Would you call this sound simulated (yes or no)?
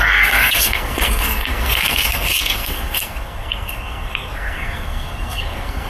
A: yes